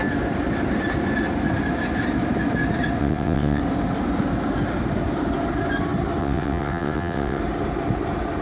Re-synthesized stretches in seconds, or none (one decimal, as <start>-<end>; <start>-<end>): 3.0-3.6; 6.2-7.4